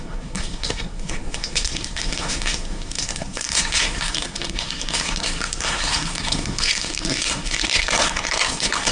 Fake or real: fake